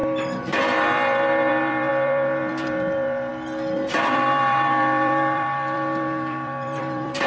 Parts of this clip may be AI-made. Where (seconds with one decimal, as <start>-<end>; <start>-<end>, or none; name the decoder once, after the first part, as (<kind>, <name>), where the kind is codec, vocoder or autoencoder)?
0.0-3.3 (vocoder, BigVGAN v2); 3.9-7.3